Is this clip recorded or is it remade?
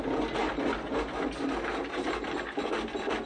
recorded